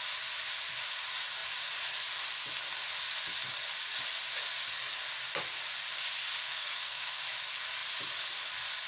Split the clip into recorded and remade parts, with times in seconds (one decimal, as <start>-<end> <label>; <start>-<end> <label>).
0.0-6.4 recorded; 6.4-7.2 remade; 7.2-8.9 recorded

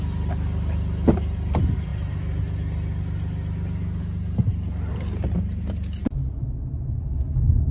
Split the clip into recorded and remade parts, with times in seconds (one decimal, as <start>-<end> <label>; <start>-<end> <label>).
0.0-7.7 recorded